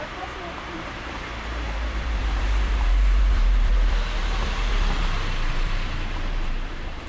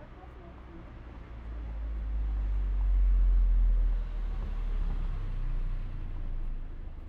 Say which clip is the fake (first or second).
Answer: first